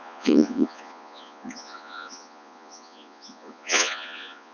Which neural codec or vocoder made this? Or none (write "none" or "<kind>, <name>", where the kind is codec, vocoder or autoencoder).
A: vocoder, Vocos